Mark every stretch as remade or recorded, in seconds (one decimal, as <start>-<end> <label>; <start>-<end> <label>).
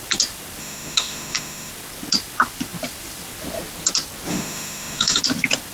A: 0.0-0.6 recorded; 0.6-1.7 remade; 1.7-4.3 recorded; 4.3-5.2 remade; 5.2-5.7 recorded